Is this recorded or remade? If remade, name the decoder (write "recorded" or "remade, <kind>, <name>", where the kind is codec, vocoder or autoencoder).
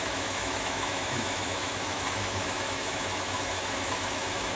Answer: remade, autoencoder, DAC-VAE